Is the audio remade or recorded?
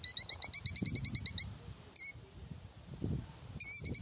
recorded